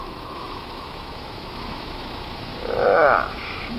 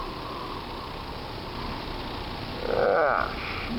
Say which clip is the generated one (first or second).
first